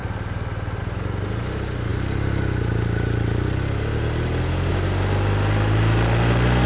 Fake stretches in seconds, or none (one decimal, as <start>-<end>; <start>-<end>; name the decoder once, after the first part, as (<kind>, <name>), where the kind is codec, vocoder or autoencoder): none